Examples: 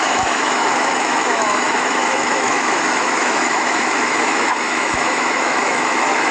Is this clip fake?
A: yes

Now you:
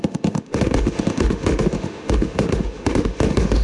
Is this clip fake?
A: yes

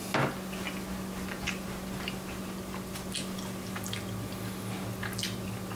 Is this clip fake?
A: no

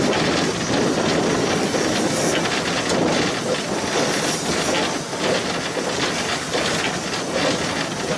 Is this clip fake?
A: no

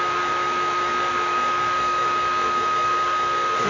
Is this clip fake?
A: yes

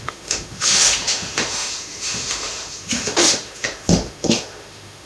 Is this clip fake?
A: yes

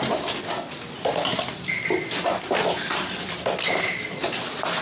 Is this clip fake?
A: no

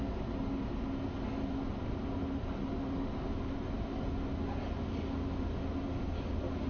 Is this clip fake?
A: no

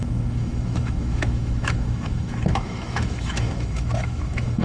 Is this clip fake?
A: yes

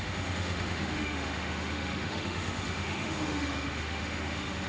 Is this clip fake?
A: yes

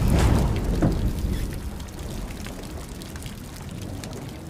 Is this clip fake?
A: no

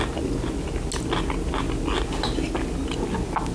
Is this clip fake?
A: no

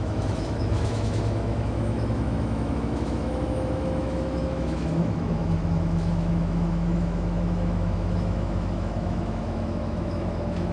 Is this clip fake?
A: yes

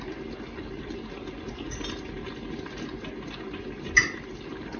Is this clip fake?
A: no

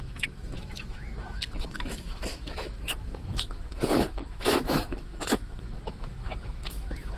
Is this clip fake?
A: yes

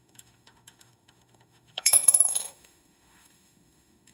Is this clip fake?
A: yes